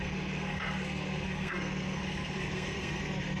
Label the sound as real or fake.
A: fake